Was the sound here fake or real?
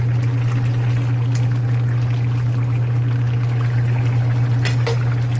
real